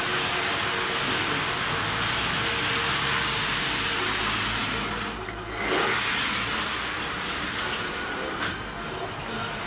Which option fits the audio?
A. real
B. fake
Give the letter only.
A